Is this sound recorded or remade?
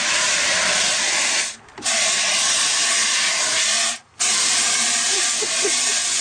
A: recorded